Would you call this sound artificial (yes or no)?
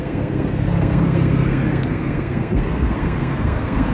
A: yes